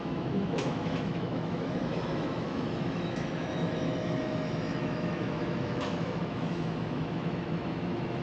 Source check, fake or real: fake